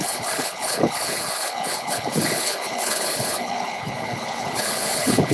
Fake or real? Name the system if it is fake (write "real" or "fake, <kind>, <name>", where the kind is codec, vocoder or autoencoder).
fake, codec, HILCodec